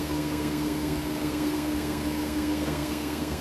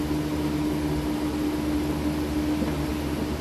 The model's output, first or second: first